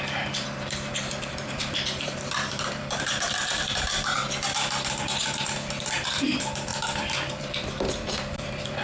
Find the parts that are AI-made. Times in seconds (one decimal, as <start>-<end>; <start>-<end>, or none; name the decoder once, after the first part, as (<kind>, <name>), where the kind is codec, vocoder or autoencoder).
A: 0.0-4.2 (vocoder, BigVGAN v2); 5.5-6.7; 7.3-8.8